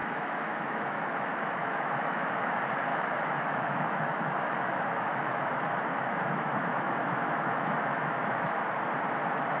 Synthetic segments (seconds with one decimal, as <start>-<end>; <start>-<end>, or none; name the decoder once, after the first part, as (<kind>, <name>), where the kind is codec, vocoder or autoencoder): 0.0-2.5 (autoencoder, DAC-VAE); 2.9-5.5; 5.9-8.7